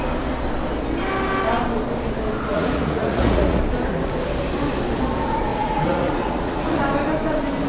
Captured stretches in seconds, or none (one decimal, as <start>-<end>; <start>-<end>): 0.0-2.5; 3.6-5.5; 6.8-7.7